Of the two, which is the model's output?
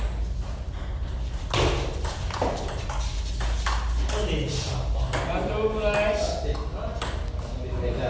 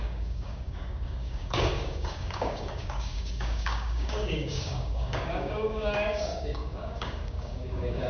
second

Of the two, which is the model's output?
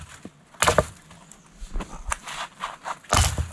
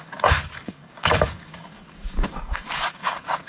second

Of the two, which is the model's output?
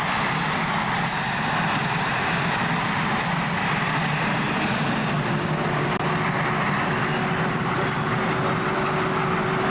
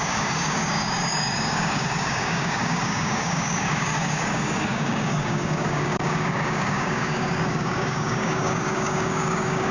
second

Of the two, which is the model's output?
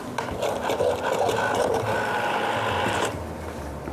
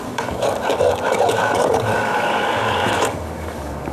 second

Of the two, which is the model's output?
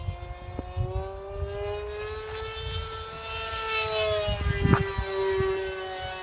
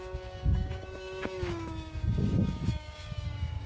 second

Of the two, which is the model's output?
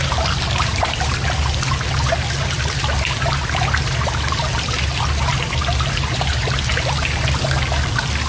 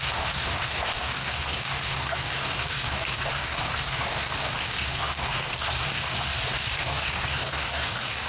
second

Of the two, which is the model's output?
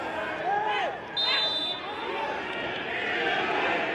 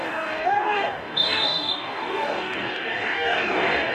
second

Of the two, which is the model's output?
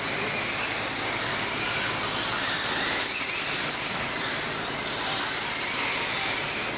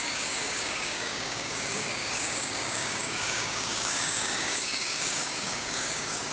second